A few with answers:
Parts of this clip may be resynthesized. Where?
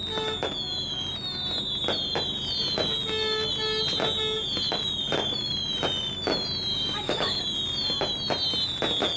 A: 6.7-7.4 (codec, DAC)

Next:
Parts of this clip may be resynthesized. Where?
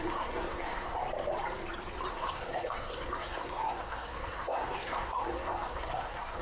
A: 0.0-1.0 (codec, SNAC); 2.1-6.4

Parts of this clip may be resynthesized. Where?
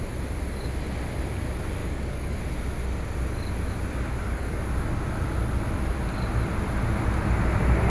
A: 1.8-2.4 (codec, DAC); 4.1-4.6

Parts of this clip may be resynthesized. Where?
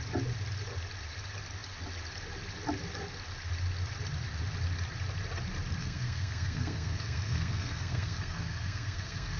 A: 5.8-9.4 (codec, SNAC)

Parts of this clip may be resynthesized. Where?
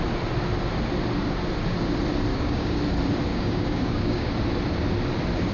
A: 2.3-2.8 (codec, DAC); 3.3-4.3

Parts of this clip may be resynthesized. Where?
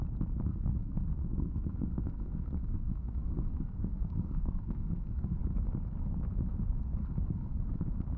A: 0.5-5.4 (codec, SNAC); 7.0-7.7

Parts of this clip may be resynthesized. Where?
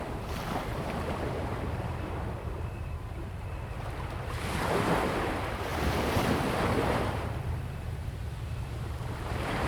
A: 0.0-9.7 (vocoder, BigVGAN v2)